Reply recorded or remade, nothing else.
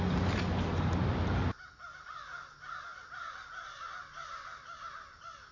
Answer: recorded